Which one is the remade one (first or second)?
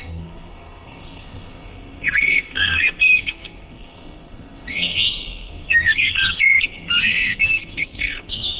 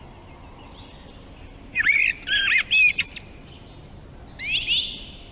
first